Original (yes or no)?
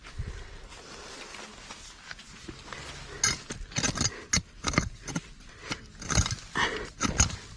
yes